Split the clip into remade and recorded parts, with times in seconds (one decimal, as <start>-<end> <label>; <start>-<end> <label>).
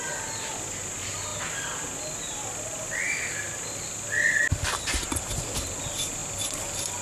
0.0-7.0 recorded